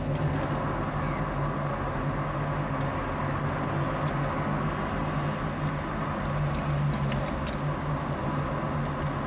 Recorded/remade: recorded